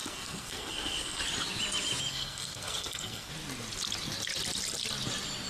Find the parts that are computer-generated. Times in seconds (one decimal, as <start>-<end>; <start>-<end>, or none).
0.0-1.2; 2.1-3.3